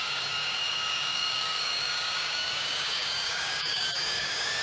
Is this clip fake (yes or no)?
yes